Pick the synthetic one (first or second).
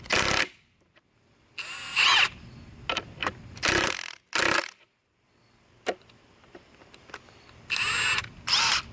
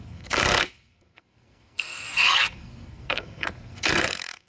second